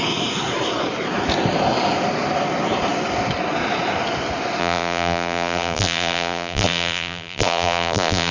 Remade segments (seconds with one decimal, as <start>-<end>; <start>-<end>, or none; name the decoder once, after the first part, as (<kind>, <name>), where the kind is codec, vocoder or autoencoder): 4.6-8.3 (vocoder, BigVGAN v2)